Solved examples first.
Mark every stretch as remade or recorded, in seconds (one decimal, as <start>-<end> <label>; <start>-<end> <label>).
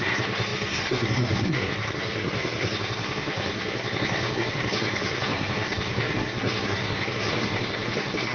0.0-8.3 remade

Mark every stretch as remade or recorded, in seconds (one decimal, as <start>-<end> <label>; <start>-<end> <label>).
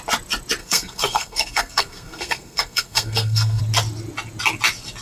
0.0-0.6 recorded; 0.6-3.6 remade; 3.6-5.0 recorded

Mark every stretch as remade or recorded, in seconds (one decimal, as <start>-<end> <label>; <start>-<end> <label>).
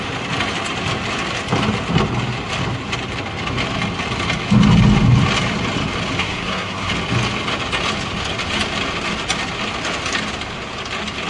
0.0-6.2 recorded; 6.2-6.9 remade; 6.9-11.3 recorded